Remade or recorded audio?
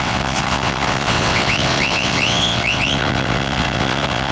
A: remade